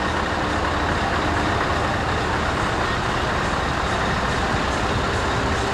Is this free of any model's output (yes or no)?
yes